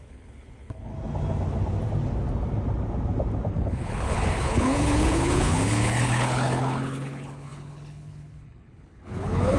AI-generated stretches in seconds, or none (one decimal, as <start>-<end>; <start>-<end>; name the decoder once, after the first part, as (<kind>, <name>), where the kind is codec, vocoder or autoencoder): 0.0-0.9 (codec, HILCodec); 3.5-9.6